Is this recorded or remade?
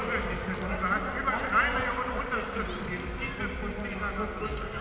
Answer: recorded